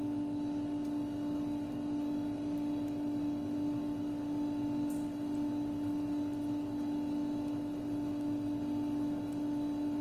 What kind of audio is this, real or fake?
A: real